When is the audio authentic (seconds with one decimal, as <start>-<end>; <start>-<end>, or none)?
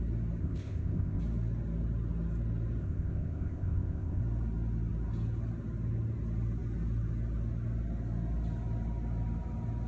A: 0.0-0.4; 1.2-2.8; 4.2-9.9